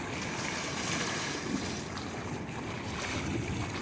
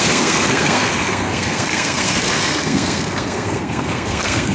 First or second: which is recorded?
first